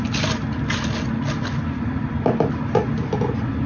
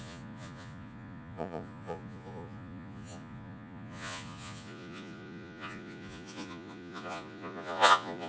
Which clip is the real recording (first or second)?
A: first